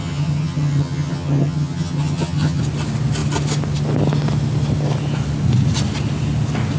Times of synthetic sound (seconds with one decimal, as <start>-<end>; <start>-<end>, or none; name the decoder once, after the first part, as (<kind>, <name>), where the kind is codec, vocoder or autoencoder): 0.0-2.6 (vocoder, HiFi-GAN)